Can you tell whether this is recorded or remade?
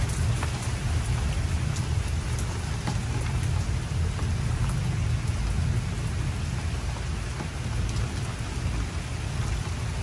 recorded